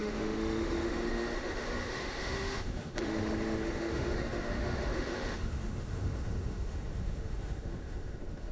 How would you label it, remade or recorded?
remade